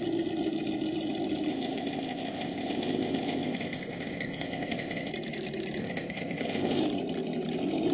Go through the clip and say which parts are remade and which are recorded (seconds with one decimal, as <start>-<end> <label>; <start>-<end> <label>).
0.0-1.5 recorded; 1.5-5.1 remade; 5.1-5.8 recorded; 5.8-6.8 remade; 6.8-7.9 recorded